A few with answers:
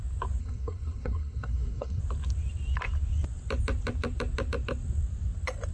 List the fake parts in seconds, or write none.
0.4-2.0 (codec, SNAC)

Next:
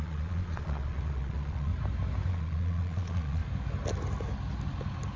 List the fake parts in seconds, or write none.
0.0-1.7 (vocoder, Vocos); 2.3-3.4

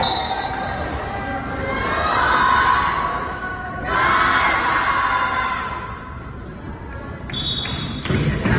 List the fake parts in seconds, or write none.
3.1-3.8 (autoencoder, DAC-VAE)

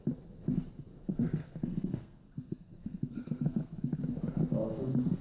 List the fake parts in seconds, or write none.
0.9-4.0 (codec, SNAC)

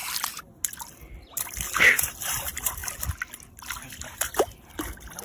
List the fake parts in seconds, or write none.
1.8-2.8 (vocoder, BigVGAN v2); 3.9-5.2

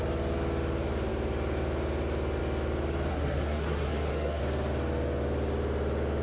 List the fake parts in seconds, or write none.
3.1-4.4 (codec, SNAC)

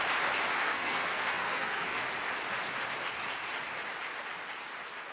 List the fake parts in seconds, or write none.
0.6-2.0 (codec, SNAC)

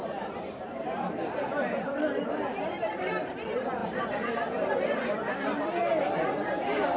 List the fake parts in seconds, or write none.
0.0-7.0 (vocoder, BigVGAN v2)